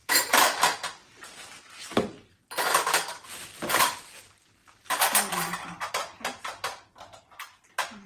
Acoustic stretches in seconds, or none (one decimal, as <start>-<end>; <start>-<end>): 0.6-4.6; 5.9-8.1